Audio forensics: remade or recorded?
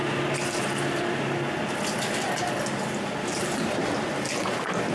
recorded